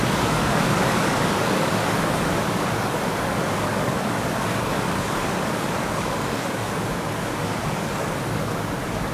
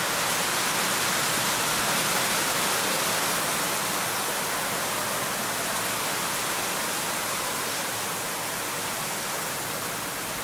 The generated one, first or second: first